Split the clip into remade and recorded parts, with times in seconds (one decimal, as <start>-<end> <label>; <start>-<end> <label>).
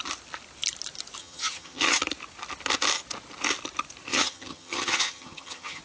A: 0.0-1.2 recorded; 1.2-2.0 remade; 2.0-4.1 recorded; 4.1-5.8 remade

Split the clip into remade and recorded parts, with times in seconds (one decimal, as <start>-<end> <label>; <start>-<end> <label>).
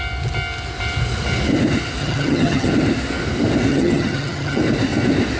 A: 0.0-2.0 recorded; 2.0-2.7 remade; 2.7-3.7 recorded; 3.7-4.6 remade; 4.6-5.4 recorded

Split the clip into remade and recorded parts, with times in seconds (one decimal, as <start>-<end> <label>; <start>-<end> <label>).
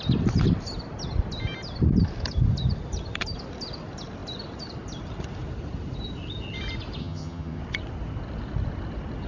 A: 0.0-7.0 recorded; 7.0-7.6 remade; 7.6-9.3 recorded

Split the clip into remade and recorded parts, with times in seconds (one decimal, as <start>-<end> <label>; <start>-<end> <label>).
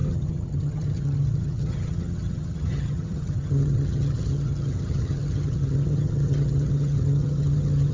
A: 0.0-7.9 remade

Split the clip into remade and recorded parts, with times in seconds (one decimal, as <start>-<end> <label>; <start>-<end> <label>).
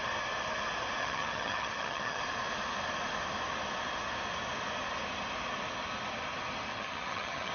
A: 0.0-1.0 recorded; 1.0-2.2 remade; 2.2-6.7 recorded; 6.7-7.5 remade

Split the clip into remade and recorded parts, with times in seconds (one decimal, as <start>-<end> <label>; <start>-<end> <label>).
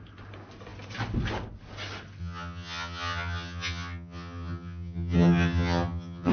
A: 0.0-2.2 recorded; 2.2-6.3 remade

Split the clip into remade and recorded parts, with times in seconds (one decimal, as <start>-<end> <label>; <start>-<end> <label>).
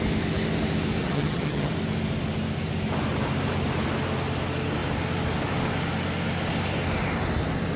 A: 0.0-1.0 recorded; 1.0-1.7 remade; 1.7-7.8 recorded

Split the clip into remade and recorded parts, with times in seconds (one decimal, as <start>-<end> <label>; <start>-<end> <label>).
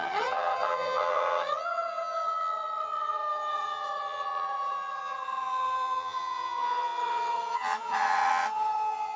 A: 0.0-9.2 remade